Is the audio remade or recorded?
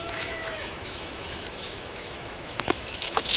remade